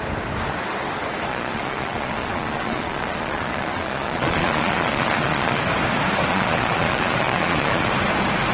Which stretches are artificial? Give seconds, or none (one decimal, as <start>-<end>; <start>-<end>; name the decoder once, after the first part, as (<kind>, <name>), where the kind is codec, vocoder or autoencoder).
1.3-5.6 (vocoder, Vocos); 6.3-7.9